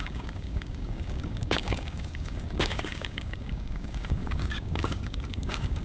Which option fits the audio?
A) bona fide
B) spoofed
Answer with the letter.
B